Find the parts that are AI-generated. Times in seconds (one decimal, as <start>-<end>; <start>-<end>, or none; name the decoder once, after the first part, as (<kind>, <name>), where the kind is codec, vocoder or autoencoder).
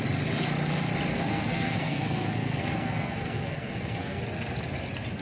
1.1-4.2 (codec, SNAC)